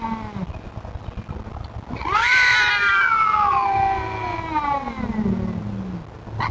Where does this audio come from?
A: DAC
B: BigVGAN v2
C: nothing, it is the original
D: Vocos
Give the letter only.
C